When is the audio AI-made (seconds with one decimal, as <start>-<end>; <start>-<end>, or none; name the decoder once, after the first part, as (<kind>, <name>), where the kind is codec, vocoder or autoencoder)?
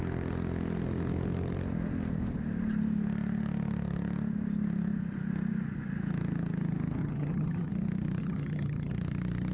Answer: 7.0-7.7 (vocoder, HiFi-GAN); 8.2-8.9